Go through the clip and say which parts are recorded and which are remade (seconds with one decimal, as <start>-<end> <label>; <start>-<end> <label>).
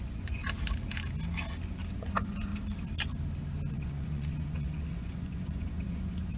0.0-0.4 remade; 0.4-1.9 recorded; 1.9-2.5 remade; 2.5-3.7 recorded; 3.7-6.4 remade